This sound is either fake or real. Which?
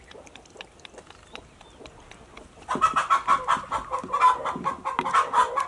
real